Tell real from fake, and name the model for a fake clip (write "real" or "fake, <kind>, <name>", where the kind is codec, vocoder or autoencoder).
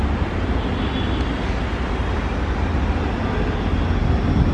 real